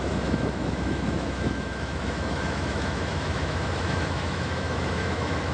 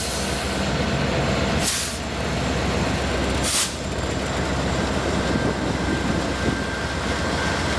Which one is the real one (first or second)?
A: second